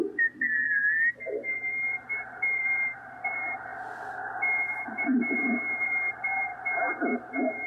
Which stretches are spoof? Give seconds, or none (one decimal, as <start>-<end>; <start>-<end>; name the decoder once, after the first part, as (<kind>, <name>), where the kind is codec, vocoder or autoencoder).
0.0-3.7 (vocoder, BigVGAN v2); 4.4-6.5; 7.3-7.7